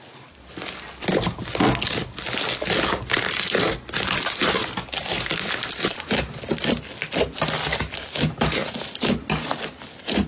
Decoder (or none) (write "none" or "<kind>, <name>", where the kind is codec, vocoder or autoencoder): none